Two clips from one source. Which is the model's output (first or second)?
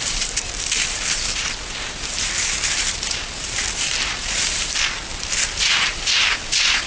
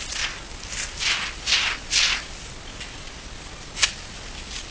first